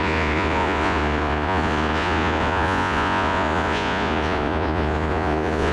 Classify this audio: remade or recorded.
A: remade